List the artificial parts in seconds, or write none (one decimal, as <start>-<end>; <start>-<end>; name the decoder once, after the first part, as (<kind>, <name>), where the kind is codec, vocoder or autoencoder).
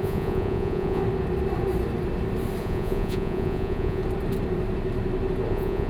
0.0-1.0 (vocoder, Vocos); 2.6-4.0; 5.5-5.9